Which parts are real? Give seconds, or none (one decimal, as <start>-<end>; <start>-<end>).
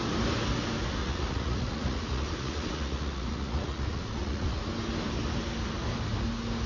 0.0-1.0; 4.6-6.7